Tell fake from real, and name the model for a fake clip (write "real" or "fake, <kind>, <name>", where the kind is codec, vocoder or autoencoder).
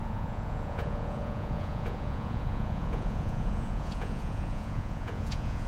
fake, vocoder, Vocos